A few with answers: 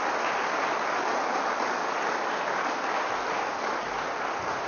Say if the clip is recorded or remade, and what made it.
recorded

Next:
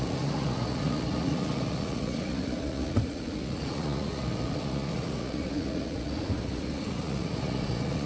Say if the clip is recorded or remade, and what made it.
remade, vocoder, Vocos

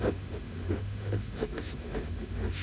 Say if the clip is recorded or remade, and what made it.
remade, autoencoder, DAC-VAE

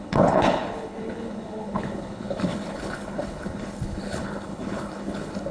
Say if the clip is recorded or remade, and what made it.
remade, codec, HILCodec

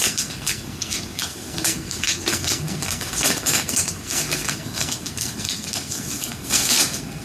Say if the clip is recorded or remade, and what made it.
remade, codec, SNAC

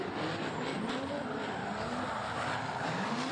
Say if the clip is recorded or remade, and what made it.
recorded